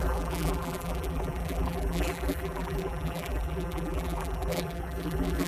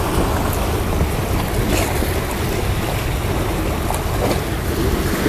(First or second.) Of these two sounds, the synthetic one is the first